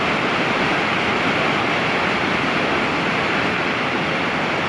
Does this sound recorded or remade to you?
recorded